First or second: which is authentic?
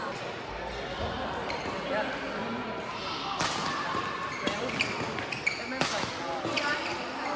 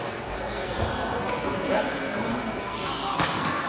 first